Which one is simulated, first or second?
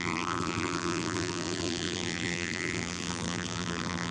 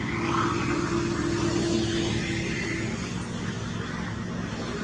first